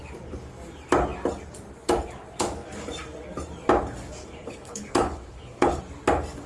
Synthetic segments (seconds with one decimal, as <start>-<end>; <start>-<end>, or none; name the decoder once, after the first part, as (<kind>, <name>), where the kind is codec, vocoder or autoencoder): 4.2-5.8 (codec, HILCodec)